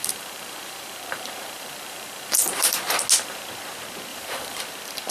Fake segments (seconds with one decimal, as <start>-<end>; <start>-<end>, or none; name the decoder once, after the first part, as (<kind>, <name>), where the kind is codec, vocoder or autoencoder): 0.0-2.9 (vocoder, BigVGAN v2); 4.1-4.6